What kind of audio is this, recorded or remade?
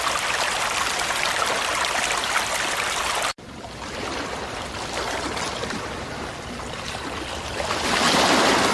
recorded